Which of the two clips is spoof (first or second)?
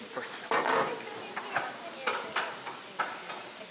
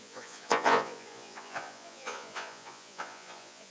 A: second